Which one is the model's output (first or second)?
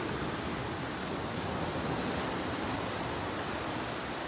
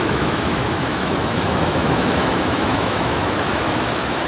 second